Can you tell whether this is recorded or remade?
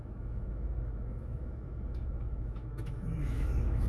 remade